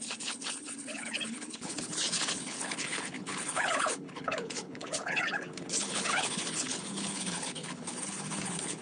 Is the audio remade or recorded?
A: remade